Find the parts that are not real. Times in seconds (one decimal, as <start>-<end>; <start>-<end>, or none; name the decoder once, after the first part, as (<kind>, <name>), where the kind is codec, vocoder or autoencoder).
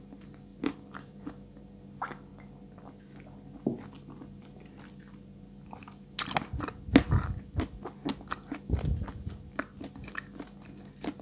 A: 0.5-1.6 (vocoder, BigVGAN v2)